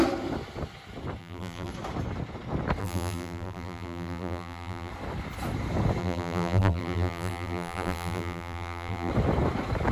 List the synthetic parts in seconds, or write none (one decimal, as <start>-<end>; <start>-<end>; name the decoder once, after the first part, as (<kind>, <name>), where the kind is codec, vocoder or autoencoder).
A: 1.2-1.7 (vocoder, BigVGAN v2); 2.8-4.9; 6.0-9.1